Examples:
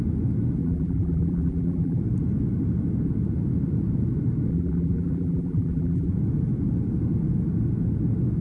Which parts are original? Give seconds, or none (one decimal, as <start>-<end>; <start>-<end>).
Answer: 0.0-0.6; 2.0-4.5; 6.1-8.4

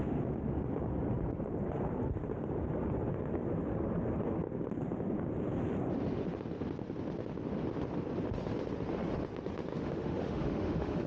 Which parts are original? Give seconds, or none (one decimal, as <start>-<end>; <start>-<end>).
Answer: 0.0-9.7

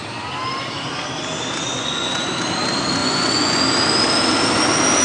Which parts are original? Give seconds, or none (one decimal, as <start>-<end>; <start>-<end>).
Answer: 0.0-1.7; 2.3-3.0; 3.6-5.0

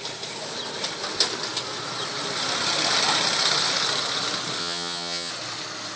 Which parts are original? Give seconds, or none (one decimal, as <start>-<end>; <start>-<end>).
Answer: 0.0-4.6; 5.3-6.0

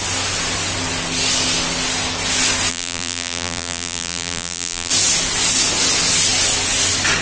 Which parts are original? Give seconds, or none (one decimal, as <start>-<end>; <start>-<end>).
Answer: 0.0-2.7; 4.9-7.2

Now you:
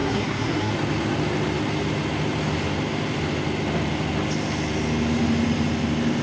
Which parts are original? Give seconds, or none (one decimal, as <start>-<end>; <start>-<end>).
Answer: 0.7-6.2

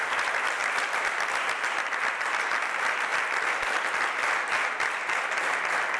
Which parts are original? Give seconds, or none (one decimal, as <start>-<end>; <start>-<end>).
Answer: 0.0-6.0